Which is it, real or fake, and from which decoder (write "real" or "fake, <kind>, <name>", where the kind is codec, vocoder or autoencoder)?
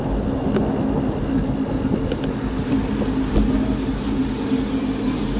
real